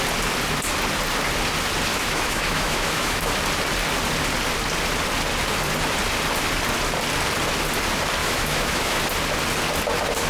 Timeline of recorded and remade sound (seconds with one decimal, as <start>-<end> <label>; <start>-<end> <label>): 0.0-1.9 recorded; 1.9-3.3 remade; 3.3-8.2 recorded; 8.2-9.0 remade; 9.0-10.3 recorded